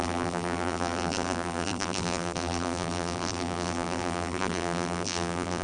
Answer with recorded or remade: remade